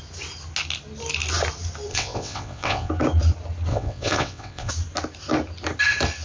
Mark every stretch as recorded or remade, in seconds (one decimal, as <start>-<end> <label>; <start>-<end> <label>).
0.0-1.9 recorded; 1.9-2.9 remade; 2.9-3.7 recorded; 3.7-4.7 remade; 4.7-6.2 recorded

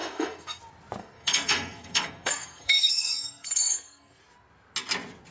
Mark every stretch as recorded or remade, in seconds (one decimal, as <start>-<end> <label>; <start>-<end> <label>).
0.0-0.6 remade; 0.6-1.0 recorded; 1.0-4.2 remade; 4.2-5.3 recorded